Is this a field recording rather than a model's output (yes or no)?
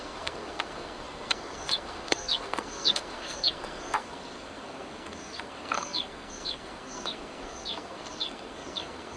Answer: no